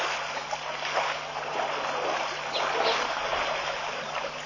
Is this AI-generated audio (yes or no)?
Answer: no